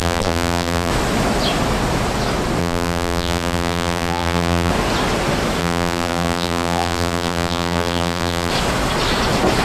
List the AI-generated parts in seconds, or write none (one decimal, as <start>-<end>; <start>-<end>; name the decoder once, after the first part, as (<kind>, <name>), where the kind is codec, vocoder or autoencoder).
0.0-0.9 (vocoder, BigVGAN v2); 2.6-4.7; 5.6-8.5